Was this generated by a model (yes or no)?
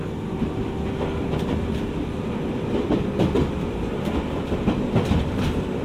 no